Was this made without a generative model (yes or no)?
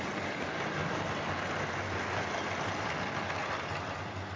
yes